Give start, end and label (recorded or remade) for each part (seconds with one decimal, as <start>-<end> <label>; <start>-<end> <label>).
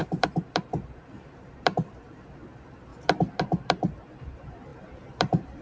0.0-2.9 remade; 2.9-3.4 recorded; 3.4-5.6 remade